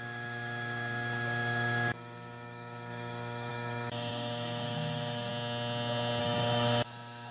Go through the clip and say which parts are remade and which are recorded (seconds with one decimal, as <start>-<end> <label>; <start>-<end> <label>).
0.0-5.3 remade; 5.3-6.2 recorded; 6.2-7.3 remade